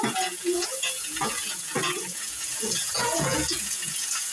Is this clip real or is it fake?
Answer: fake